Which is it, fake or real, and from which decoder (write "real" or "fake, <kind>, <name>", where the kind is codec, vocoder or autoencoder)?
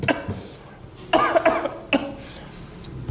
real